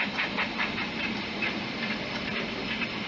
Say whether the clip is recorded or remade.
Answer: recorded